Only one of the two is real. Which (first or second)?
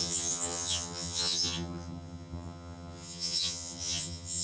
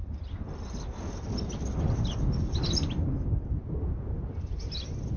second